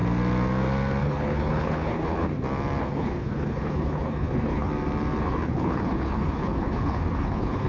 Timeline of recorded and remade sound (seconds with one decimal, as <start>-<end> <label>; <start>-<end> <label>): 0.0-1.0 recorded; 1.0-2.3 remade; 2.3-2.8 recorded; 2.8-4.7 remade; 4.7-5.2 recorded; 5.2-7.7 remade